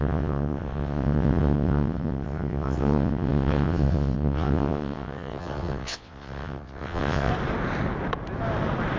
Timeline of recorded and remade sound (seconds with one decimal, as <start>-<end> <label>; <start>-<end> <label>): 0.0-7.3 remade; 7.3-9.0 recorded